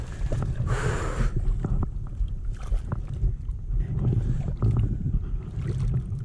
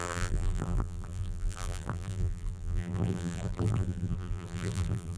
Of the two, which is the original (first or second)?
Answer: first